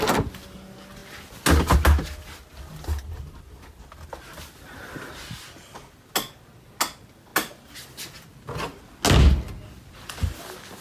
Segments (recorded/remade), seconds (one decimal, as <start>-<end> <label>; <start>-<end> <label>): 0.0-10.8 recorded